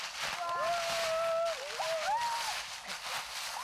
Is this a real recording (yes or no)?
yes